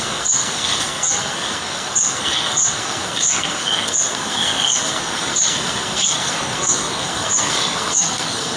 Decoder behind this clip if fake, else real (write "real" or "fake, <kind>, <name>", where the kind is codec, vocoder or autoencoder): fake, codec, SNAC